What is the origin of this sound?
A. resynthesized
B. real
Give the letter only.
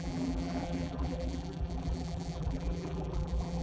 A